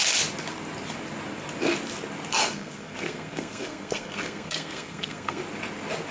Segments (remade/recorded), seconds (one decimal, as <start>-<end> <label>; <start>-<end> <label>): 0.0-2.4 recorded; 2.4-5.4 remade; 5.4-6.1 recorded